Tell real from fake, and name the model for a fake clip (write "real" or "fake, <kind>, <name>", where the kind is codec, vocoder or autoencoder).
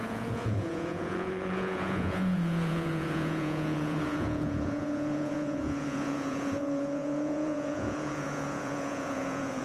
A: fake, vocoder, Vocos